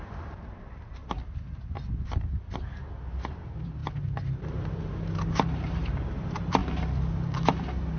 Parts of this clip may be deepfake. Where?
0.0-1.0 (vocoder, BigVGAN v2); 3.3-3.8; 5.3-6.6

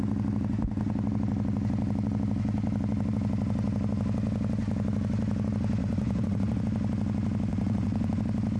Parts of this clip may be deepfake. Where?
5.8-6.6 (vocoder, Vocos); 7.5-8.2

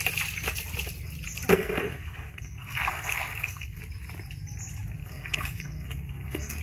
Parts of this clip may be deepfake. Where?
1.5-3.8 (codec, SNAC); 5.0-6.6

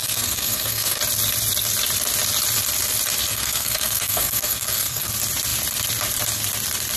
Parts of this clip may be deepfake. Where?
0.0-1.0 (codec, SNAC); 3.3-5.1